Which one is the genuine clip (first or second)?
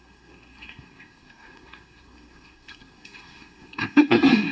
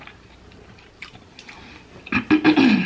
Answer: second